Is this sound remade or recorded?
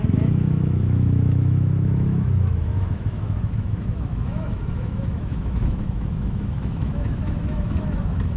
remade